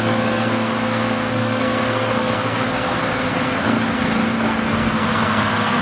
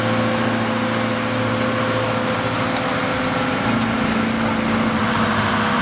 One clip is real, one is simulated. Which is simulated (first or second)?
first